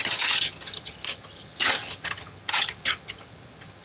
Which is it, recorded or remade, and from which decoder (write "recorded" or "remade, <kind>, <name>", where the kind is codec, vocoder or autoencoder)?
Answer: remade, vocoder, HiFi-GAN